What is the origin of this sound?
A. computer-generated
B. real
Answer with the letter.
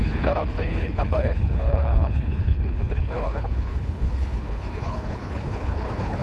A